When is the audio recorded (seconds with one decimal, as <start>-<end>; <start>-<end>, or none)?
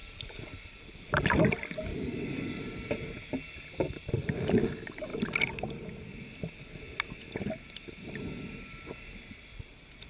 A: 4.1-5.1; 6.4-10.1